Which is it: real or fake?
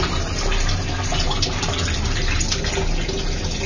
real